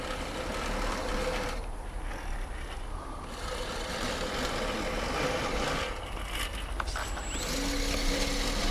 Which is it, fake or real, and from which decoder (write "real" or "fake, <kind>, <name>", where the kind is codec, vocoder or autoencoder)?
real